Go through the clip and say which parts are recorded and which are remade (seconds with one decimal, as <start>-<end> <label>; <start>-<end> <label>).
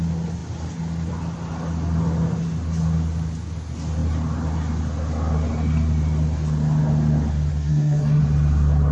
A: 0.0-7.5 recorded; 7.5-8.2 remade; 8.2-8.9 recorded